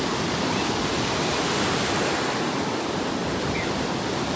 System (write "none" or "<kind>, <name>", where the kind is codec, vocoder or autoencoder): none